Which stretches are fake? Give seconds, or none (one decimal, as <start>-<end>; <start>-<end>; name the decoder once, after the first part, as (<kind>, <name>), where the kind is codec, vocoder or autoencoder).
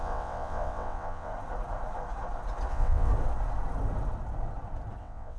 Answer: 0.0-1.3 (vocoder, WaveNeXt); 2.7-3.1; 5.0-5.4